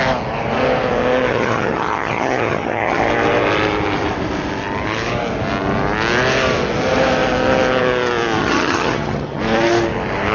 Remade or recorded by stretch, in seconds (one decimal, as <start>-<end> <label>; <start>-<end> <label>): 0.0-1.3 recorded; 1.3-3.0 remade; 3.0-8.4 recorded; 8.4-9.4 remade; 9.4-10.3 recorded